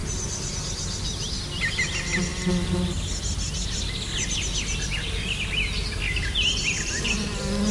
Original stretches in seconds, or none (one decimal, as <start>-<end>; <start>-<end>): 0.0-7.7